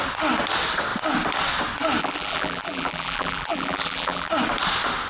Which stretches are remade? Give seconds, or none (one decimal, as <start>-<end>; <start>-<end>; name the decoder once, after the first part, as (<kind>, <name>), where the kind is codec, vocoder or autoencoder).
2.0-4.3 (vocoder, BigVGAN v2)